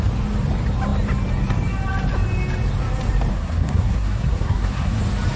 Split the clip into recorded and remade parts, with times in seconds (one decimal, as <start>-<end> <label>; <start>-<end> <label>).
0.0-3.3 recorded; 3.3-5.0 remade; 5.0-5.4 recorded